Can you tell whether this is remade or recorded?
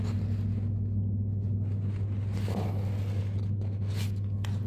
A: recorded